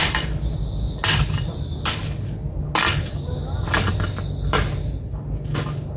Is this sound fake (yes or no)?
no